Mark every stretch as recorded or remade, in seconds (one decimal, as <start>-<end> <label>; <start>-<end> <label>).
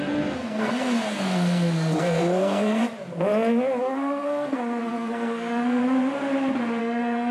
0.0-2.8 remade; 2.8-3.8 recorded; 3.8-5.8 remade; 5.8-6.8 recorded; 6.8-7.3 remade